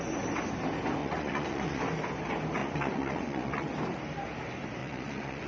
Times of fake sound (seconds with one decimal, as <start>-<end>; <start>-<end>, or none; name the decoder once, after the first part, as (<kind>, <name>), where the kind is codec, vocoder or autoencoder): 1.0-1.8 (vocoder, Vocos); 2.6-3.7; 4.8-5.5